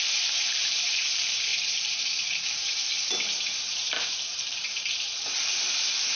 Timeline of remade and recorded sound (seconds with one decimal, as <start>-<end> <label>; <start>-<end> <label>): 0.0-2.9 remade; 2.9-3.7 recorded; 3.7-6.2 remade